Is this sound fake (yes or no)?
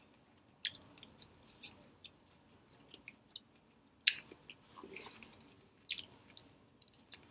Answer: no